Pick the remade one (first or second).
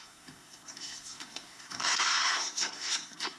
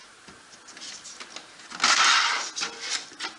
first